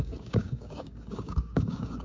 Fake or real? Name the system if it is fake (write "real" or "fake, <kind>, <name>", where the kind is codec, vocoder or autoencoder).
fake, codec, DAC